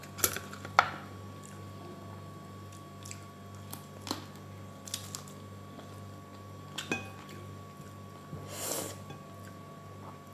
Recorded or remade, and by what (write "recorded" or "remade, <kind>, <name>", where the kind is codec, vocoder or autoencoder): recorded